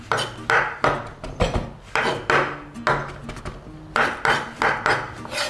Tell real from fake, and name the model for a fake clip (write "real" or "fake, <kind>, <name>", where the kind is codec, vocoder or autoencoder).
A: real